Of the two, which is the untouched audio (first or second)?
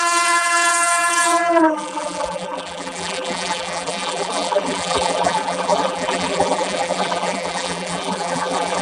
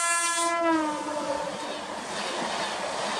second